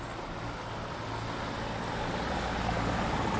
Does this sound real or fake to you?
real